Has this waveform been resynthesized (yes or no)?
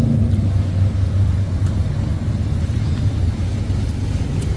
no